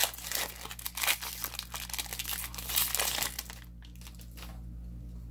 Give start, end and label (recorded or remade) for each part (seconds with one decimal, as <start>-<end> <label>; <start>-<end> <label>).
0.0-5.3 recorded